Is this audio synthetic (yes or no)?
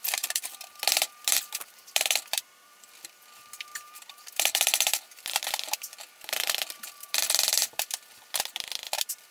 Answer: yes